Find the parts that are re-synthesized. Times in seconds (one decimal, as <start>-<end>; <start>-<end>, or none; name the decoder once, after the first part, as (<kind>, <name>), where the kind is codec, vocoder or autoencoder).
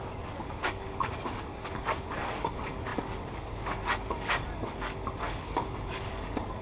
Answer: 0.0-6.6 (codec, DAC)